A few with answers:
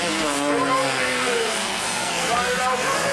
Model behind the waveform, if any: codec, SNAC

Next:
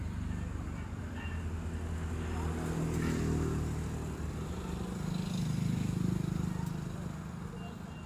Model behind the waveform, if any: none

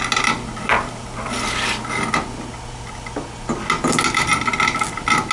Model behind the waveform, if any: none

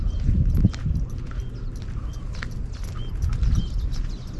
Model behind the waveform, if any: none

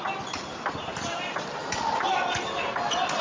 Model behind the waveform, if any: none